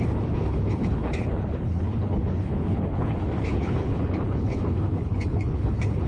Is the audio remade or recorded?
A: remade